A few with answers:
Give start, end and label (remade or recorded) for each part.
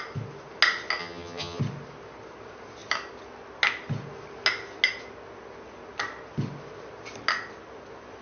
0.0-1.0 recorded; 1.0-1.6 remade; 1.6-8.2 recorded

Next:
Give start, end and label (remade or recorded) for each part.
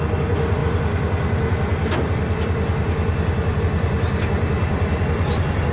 0.0-5.7 recorded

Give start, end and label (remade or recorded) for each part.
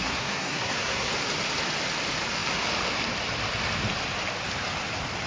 0.0-1.1 remade; 1.1-5.3 recorded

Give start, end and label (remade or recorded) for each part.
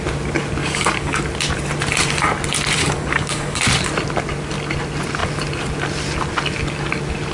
0.0-0.6 recorded; 0.6-1.2 remade; 1.2-2.8 recorded; 2.8-3.6 remade; 3.6-7.3 recorded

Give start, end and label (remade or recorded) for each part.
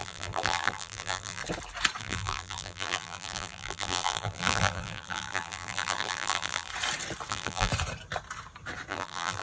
0.0-1.4 remade; 1.4-2.0 recorded; 2.0-6.7 remade; 6.7-7.3 recorded; 7.3-7.7 remade; 7.7-8.9 recorded; 8.9-9.4 remade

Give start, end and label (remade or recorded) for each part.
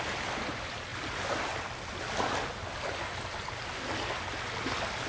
0.0-5.1 recorded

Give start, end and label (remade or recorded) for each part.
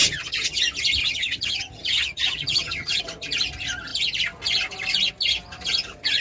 0.0-0.6 remade; 0.6-1.0 recorded; 1.0-3.0 remade; 3.0-6.2 recorded